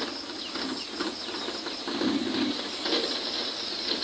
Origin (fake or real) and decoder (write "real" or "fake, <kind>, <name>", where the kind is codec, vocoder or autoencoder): real